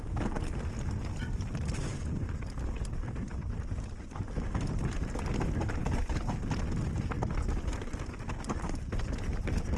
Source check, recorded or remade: recorded